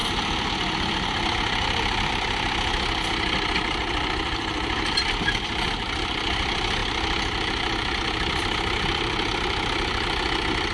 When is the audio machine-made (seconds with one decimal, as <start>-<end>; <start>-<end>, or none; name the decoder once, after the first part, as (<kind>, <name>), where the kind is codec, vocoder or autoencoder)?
0.0-10.7 (vocoder, BigVGAN v2)